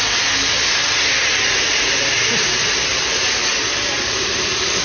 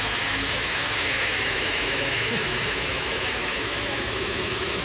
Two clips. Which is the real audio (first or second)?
first